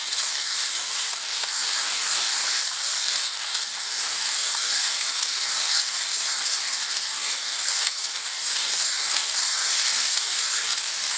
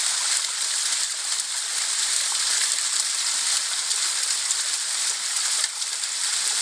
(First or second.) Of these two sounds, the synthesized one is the first